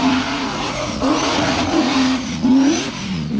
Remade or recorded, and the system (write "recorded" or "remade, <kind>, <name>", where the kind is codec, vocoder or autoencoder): remade, vocoder, Vocos